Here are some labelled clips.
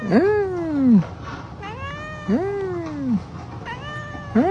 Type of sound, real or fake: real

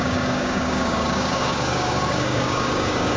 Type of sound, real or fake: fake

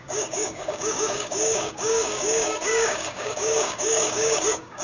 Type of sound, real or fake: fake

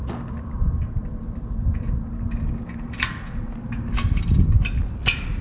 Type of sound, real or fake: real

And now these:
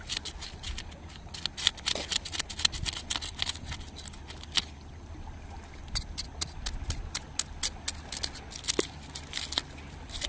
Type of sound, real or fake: real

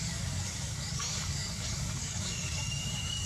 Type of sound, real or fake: fake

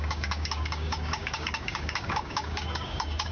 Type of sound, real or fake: fake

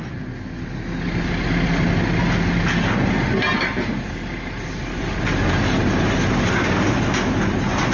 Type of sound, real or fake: real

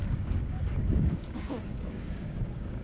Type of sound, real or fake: fake